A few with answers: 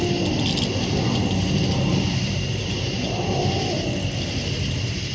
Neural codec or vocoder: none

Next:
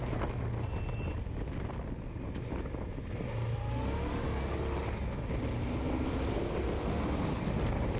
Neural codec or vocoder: none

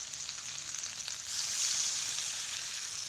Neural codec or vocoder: none